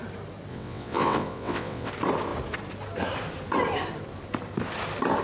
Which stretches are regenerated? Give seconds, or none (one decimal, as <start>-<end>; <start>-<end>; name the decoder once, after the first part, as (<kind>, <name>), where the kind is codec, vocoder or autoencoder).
0.5-1.9 (vocoder, WaveNeXt)